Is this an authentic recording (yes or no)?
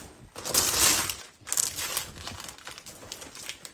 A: yes